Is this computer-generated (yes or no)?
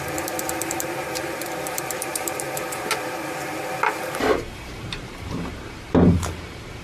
yes